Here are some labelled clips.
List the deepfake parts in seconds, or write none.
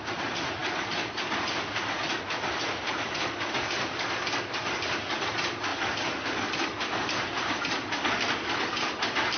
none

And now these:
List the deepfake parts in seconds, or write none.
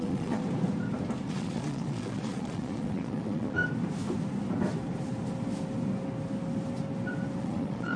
0.0-0.4 (vocoder, Vocos); 1.3-3.6; 7.4-8.0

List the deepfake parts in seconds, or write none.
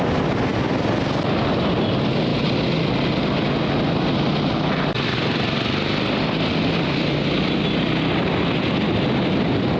none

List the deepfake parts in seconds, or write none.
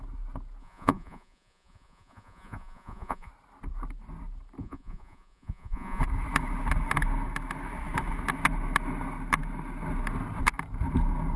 0.6-3.3 (vocoder, Vocos); 4.6-6.0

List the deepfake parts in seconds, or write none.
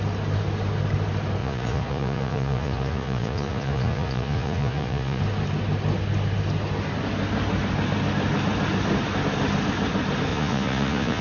1.4-5.2 (vocoder, Vocos); 10.3-11.2